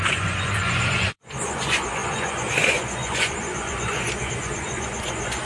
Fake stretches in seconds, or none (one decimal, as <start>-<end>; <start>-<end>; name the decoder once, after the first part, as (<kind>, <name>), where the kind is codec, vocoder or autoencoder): 0.0-5.4 (vocoder, Vocos)